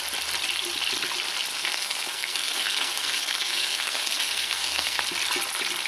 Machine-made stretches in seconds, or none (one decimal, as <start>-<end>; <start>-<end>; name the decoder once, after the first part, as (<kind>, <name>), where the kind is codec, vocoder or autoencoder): 1.5-5.0 (codec, SNAC)